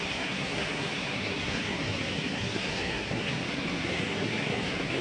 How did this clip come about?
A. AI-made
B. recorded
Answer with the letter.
A